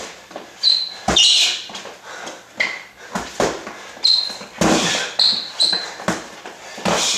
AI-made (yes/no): no